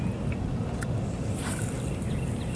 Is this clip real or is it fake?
real